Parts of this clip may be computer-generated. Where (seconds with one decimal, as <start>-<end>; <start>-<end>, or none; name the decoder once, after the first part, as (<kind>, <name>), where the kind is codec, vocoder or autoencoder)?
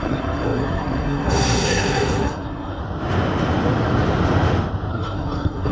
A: 0.0-2.8 (codec, SNAC); 4.9-5.7